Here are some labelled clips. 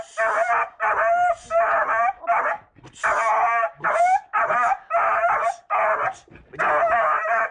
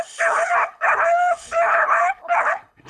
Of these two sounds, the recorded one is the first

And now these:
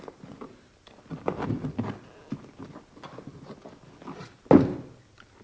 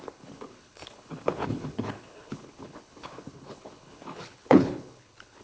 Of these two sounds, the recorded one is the first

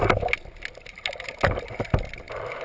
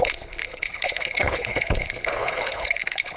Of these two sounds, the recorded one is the first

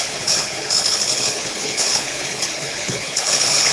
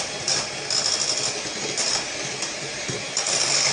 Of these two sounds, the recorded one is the second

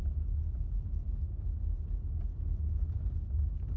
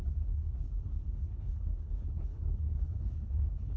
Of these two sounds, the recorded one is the first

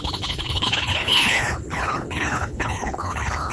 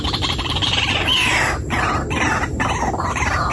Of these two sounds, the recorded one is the second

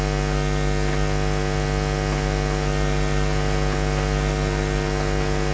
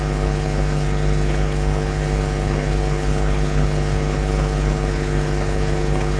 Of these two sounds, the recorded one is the first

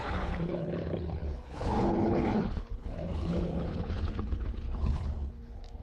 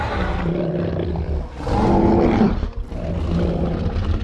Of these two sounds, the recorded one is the second